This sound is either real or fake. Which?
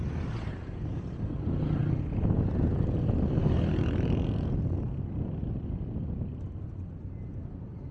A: real